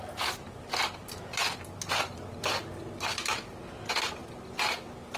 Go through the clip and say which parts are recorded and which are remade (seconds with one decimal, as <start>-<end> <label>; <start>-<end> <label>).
0.0-5.2 recorded